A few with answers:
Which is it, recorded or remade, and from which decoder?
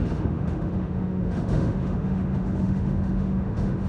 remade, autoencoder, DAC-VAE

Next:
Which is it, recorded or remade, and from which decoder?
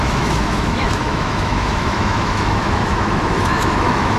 remade, autoencoder, DAC-VAE